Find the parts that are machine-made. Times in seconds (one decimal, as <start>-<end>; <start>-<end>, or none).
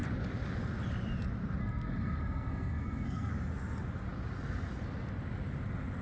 1.6-3.3